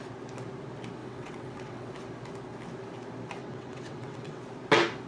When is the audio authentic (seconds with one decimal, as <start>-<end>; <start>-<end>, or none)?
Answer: 0.0-1.0; 1.9-3.4; 4.4-5.1